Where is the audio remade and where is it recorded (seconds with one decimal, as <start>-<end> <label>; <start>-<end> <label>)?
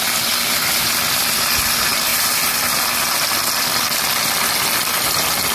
0.0-5.5 recorded